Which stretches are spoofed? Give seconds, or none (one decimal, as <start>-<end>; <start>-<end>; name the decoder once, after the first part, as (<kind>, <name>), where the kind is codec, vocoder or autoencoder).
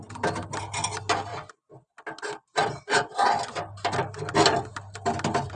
none